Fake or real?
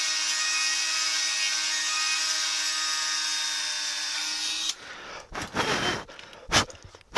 real